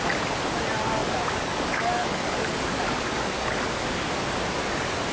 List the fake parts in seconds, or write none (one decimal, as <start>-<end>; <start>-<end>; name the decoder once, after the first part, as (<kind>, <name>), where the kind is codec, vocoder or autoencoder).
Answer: 1.0-4.1 (codec, DAC)

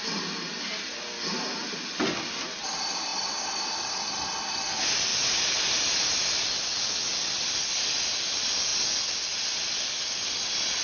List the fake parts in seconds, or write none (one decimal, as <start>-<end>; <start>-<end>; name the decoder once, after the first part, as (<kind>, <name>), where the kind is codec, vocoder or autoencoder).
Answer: none